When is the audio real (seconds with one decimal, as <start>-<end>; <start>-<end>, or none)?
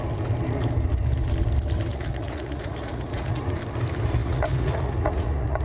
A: 0.0-1.9; 3.4-4.2